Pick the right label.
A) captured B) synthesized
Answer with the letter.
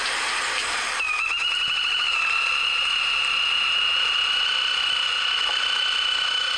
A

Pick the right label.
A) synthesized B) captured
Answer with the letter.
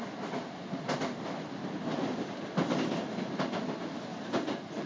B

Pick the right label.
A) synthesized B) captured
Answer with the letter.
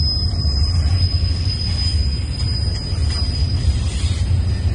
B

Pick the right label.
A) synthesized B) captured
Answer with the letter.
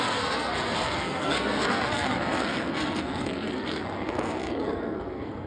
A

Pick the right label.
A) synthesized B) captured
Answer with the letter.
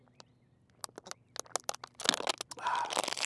B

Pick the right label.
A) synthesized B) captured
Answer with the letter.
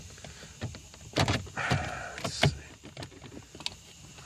B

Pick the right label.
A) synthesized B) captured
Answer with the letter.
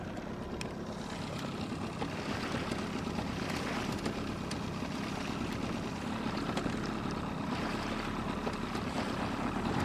B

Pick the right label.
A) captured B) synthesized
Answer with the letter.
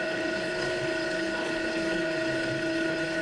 B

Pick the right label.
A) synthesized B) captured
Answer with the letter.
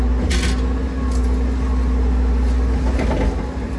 B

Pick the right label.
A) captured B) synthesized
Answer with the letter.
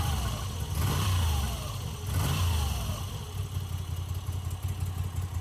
A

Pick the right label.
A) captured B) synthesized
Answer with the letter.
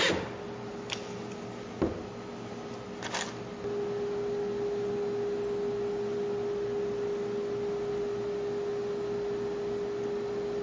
A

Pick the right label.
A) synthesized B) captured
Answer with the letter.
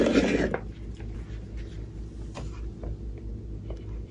B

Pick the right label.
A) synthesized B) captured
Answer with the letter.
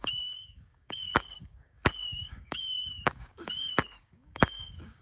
A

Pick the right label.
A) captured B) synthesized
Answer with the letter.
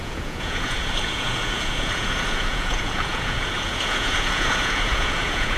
B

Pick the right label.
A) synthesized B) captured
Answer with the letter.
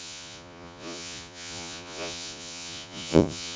A